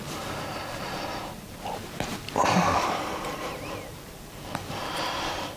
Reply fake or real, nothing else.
fake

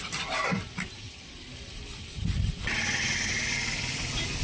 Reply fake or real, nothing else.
fake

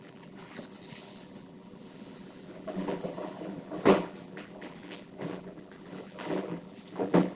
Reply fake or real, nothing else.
fake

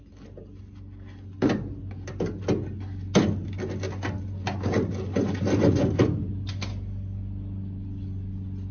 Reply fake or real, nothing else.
real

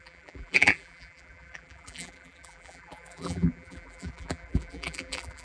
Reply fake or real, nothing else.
fake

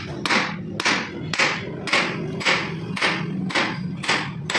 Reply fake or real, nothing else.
real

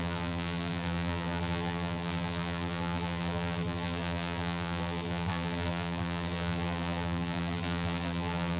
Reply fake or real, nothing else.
fake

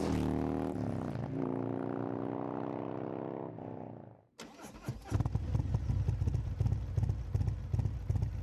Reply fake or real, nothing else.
real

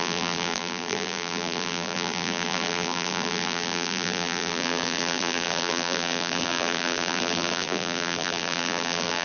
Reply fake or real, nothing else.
fake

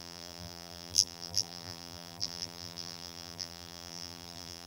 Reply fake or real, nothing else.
fake